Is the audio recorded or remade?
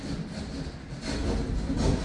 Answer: recorded